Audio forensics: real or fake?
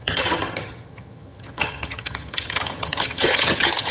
fake